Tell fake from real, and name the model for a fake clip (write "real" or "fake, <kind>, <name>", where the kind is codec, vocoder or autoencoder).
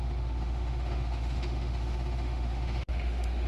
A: fake, autoencoder, DAC-VAE